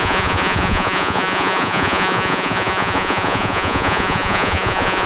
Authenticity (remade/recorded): remade